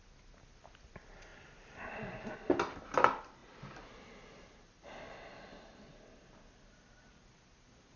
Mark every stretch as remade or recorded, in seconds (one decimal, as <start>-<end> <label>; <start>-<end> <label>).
0.0-8.0 recorded